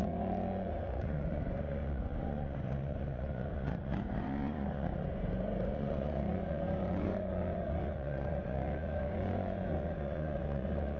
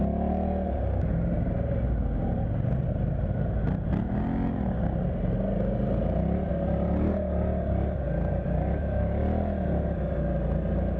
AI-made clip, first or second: first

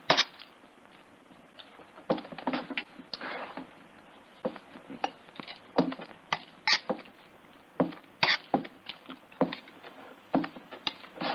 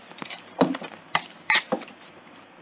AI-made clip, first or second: second